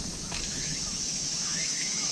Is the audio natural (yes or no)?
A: no